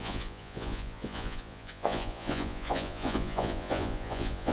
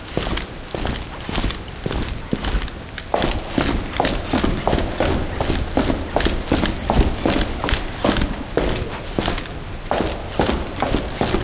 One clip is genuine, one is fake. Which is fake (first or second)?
first